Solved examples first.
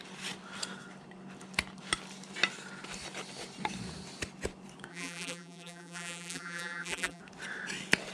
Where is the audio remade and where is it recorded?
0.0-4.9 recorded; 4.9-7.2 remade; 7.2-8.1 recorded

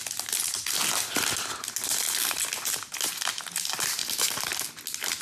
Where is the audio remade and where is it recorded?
0.0-5.2 recorded